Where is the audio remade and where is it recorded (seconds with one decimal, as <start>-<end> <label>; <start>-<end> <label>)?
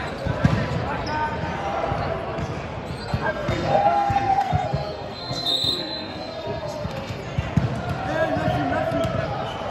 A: 0.0-3.0 recorded; 3.0-7.2 remade; 7.2-9.7 recorded